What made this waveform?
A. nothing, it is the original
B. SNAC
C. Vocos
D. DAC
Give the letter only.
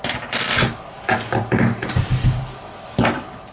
A